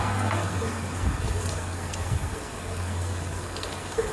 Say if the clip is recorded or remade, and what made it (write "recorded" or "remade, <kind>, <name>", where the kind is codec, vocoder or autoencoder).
remade, codec, SNAC